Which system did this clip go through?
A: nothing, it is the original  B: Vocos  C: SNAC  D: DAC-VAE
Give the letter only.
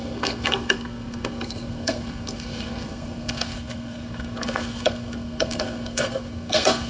C